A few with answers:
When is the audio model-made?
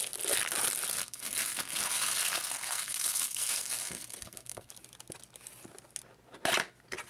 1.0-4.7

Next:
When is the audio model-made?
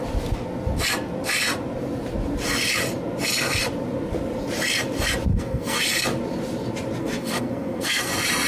5.3-5.8; 7.0-8.1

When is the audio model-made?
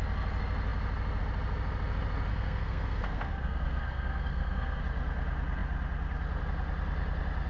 2.3-4.8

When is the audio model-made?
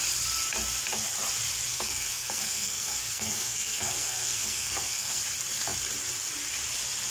1.7-5.2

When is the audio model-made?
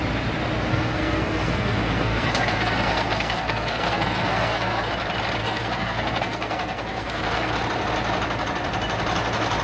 0.7-4.9; 5.4-7.5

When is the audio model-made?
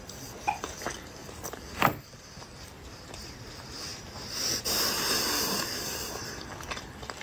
none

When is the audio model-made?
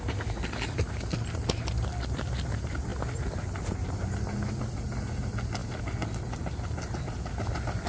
none